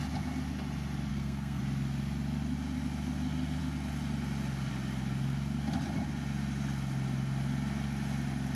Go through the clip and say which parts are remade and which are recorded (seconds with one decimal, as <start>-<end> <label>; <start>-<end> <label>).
0.0-1.1 recorded; 1.1-1.6 remade; 1.6-8.6 recorded